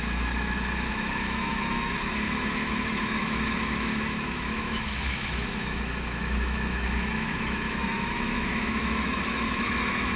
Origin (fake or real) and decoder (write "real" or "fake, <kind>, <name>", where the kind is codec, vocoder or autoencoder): fake, autoencoder, DAC-VAE